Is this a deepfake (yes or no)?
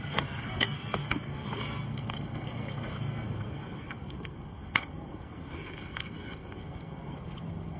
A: yes